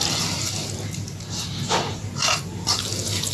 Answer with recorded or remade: recorded